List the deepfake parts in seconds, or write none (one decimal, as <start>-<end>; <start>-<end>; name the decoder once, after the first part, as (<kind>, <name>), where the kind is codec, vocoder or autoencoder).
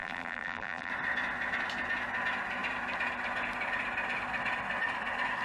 0.0-0.9 (vocoder, BigVGAN v2)